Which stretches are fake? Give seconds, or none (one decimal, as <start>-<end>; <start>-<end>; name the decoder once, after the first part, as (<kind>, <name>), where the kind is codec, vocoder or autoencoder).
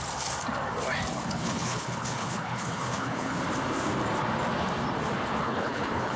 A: 1.1-3.4 (codec, HILCodec); 5.4-6.2